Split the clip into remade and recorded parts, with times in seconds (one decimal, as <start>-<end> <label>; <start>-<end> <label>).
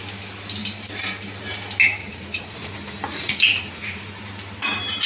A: 0.0-2.0 recorded; 2.0-4.2 remade; 4.2-5.1 recorded